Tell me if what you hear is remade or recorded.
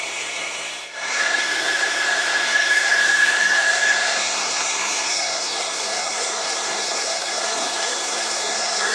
remade